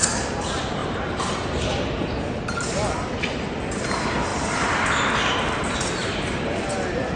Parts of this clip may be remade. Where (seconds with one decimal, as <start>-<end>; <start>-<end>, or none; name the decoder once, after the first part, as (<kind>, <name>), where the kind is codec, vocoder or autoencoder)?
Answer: 0.8-1.3 (vocoder, BigVGAN v2); 4.3-5.1; 6.0-6.7